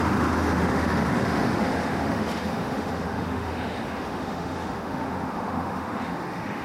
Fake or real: fake